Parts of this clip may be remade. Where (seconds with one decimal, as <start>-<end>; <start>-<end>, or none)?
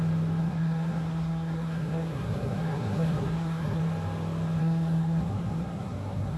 0.4-3.8; 4.6-6.4